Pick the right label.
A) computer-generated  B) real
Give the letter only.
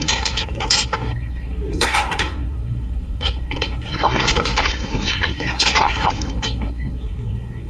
A